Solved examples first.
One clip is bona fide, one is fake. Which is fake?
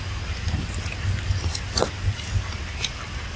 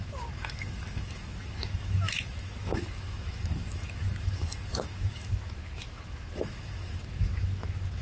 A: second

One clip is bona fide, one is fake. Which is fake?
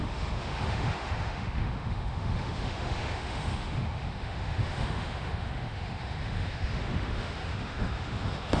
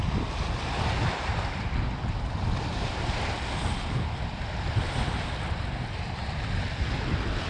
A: first